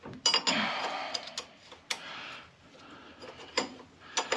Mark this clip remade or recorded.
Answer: recorded